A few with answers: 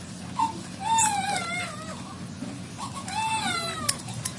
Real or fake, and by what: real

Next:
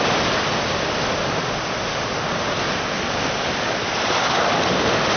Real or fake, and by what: real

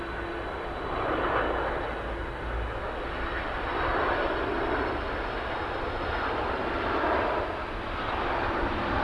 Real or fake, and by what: real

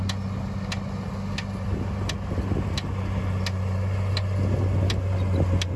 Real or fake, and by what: real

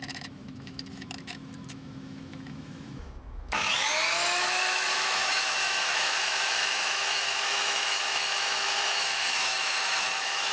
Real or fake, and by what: fake, autoencoder, DAC-VAE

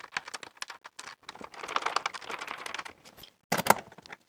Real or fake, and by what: real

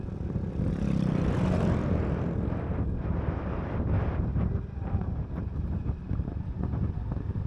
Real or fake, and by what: real